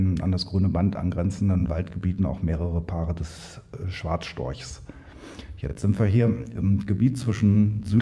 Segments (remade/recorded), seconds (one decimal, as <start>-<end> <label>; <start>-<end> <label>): 0.0-1.6 recorded; 1.6-2.2 remade; 2.2-5.7 recorded; 5.7-8.0 remade